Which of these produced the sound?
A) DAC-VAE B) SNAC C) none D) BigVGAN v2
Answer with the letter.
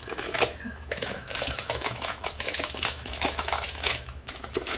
A